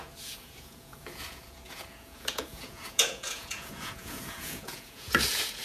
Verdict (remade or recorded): remade